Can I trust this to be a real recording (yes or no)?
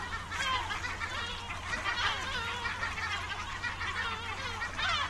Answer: yes